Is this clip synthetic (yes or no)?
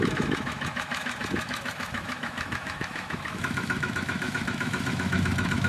yes